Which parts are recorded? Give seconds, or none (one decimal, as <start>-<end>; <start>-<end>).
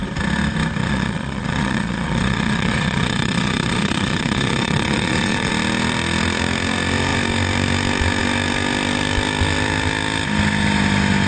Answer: 0.0-0.8; 5.5-11.3